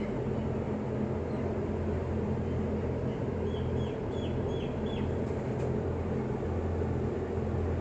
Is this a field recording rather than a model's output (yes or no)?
yes